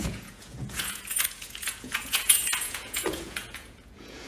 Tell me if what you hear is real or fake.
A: fake